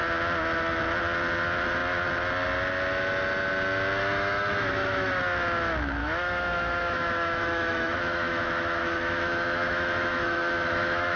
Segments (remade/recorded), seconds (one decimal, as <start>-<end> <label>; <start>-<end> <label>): 0.0-4.0 recorded; 4.0-5.2 remade; 5.2-6.0 recorded; 6.0-11.2 remade